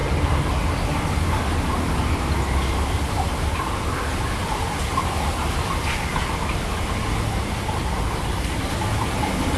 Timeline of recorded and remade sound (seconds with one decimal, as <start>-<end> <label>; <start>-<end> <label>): 0.0-9.6 recorded